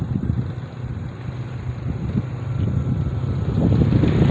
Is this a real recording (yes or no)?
yes